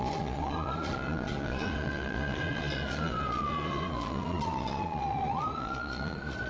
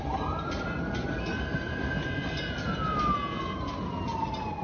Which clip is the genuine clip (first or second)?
second